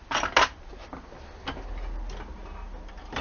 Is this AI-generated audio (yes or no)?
no